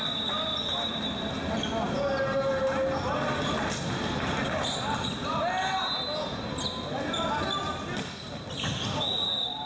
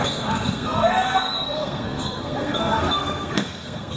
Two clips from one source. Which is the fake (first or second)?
second